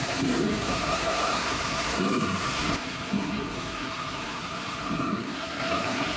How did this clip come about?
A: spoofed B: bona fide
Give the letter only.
A